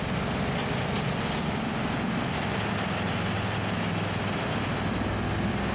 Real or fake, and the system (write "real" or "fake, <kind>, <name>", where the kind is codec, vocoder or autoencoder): real